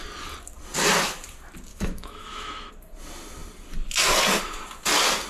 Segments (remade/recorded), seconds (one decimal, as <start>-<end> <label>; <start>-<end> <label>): 0.0-1.7 recorded; 1.7-2.7 remade; 2.7-5.3 recorded

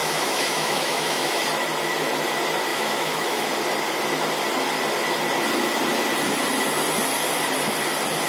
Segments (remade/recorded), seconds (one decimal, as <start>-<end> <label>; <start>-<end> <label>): 0.0-1.4 remade; 1.4-2.7 recorded; 2.7-3.5 remade; 3.5-8.3 recorded

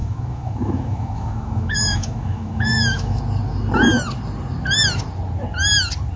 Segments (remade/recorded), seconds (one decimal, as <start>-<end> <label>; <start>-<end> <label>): 0.0-3.2 remade; 3.2-6.2 recorded